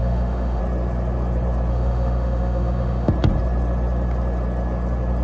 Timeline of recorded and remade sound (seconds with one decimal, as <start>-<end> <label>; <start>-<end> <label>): 0.0-0.6 remade; 0.6-1.7 recorded; 1.7-3.1 remade; 3.1-5.2 recorded